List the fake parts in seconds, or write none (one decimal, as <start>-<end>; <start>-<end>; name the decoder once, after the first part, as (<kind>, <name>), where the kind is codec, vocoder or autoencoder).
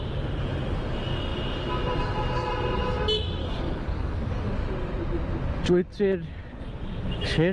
3.4-4.4 (codec, DAC)